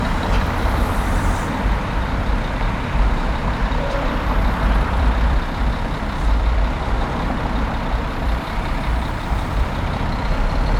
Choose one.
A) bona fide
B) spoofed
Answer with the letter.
B